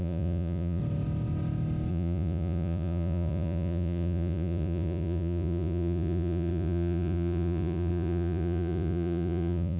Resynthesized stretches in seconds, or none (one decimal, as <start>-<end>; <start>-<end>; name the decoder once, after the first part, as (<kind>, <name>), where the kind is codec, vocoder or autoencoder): 0.0-0.8 (vocoder, Vocos); 1.9-9.8